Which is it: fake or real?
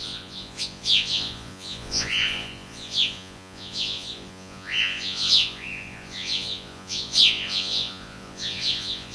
fake